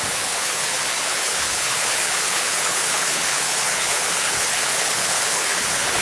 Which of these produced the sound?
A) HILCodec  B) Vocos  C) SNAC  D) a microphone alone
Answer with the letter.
A